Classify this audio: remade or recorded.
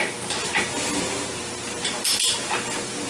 recorded